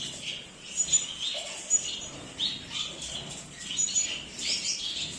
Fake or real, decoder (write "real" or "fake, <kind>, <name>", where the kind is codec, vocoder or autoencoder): real